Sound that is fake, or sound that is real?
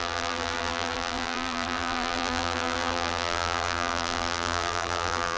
fake